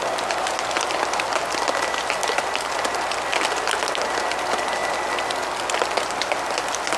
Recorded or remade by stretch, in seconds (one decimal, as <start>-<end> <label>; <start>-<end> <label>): 0.0-7.0 recorded